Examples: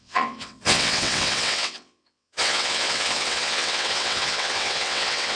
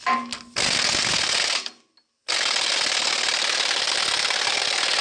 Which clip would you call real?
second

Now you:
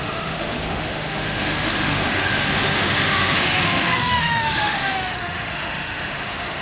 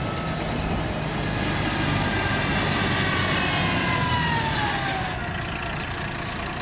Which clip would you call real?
second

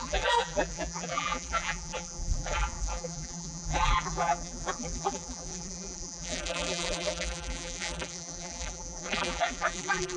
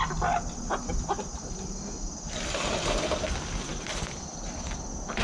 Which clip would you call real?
second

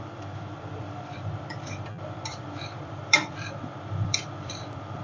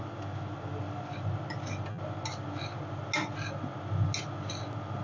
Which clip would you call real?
second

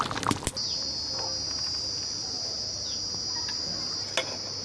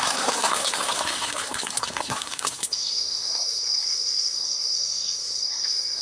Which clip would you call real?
first